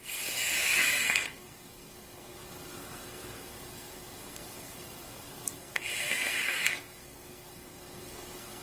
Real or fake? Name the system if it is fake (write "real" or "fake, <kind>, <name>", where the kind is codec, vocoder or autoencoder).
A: fake, codec, SNAC